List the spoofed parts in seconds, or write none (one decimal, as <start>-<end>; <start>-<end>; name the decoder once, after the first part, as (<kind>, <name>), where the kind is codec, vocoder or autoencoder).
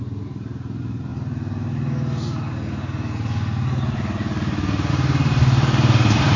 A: 0.0-1.1 (vocoder, BigVGAN v2); 4.9-6.4